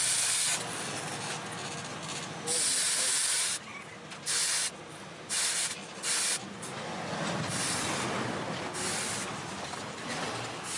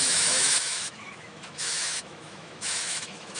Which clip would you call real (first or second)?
first